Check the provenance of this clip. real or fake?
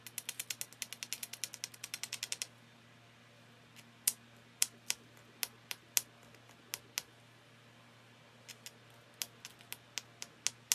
real